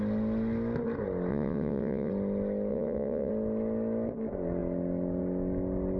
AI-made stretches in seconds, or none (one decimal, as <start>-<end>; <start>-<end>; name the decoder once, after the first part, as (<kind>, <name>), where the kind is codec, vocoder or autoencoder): 1.3-2.1 (vocoder, WaveNeXt); 2.7-3.3